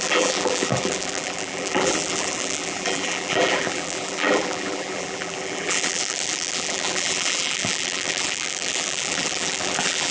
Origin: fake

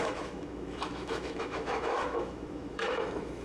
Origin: fake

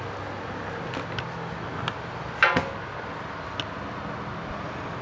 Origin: real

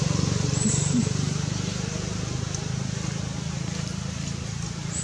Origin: real